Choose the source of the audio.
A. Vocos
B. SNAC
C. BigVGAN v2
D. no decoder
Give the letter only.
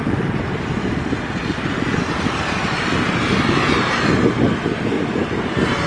D